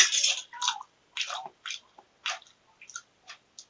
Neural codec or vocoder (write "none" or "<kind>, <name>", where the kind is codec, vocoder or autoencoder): none